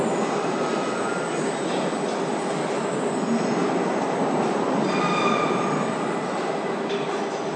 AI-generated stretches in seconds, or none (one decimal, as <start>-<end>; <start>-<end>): none